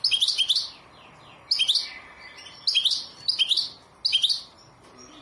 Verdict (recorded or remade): recorded